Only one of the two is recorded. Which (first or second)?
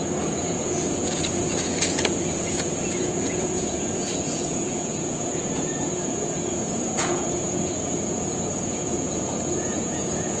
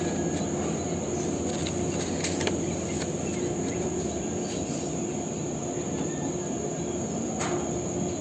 second